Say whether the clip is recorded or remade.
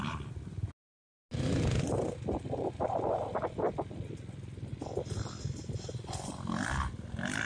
recorded